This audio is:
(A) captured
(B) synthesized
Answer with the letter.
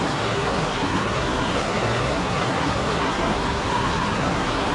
B